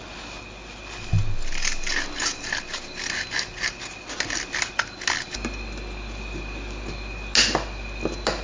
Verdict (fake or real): real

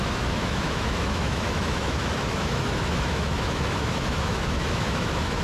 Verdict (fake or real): fake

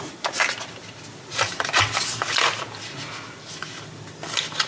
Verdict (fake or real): real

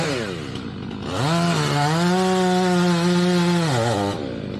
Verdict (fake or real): real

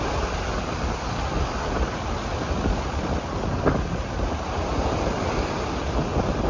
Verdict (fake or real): real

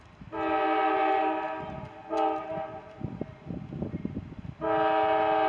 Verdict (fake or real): real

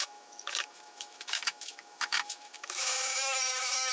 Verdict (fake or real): fake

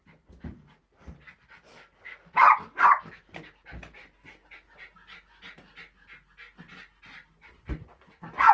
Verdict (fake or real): real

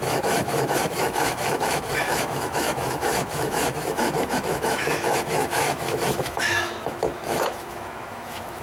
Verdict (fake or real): fake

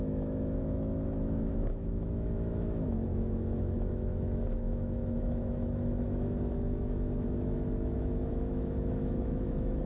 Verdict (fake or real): fake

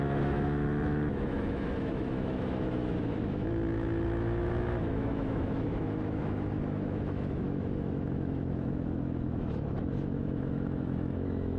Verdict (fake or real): fake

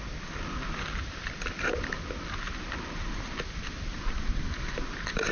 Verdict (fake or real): real